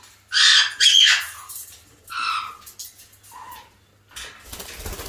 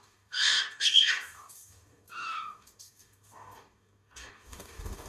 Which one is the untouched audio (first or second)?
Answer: first